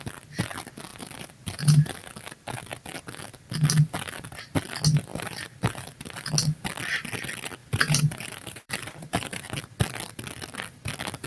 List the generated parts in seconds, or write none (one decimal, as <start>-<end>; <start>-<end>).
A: 0.9-2.0; 5.1-6.3; 7.6-9.6